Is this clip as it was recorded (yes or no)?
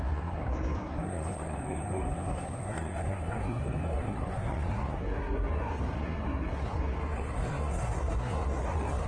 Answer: no